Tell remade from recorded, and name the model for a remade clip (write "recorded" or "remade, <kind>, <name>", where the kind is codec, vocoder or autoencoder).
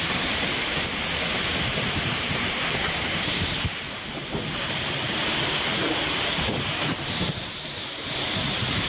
remade, vocoder, BigVGAN v2